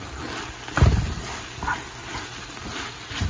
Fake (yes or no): no